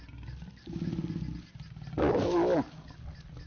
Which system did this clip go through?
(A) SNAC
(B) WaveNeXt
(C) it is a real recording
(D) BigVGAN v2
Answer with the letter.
C